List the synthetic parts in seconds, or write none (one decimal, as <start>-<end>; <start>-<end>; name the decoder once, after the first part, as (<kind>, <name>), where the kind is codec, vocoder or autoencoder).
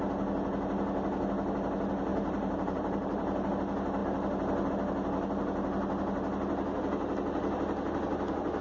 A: 2.1-3.5 (vocoder, BigVGAN v2)